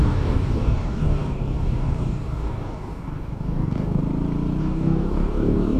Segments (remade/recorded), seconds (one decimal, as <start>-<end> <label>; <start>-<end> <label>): 0.0-4.0 remade; 4.0-4.6 recorded; 4.6-5.8 remade